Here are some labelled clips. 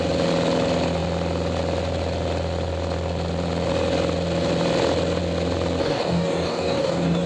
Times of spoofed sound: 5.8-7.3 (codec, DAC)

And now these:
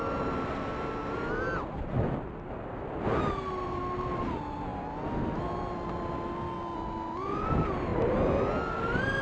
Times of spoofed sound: none

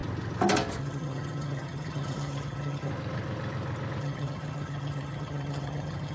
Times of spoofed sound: 0.8-2.9 (vocoder, HiFi-GAN); 4.0-6.1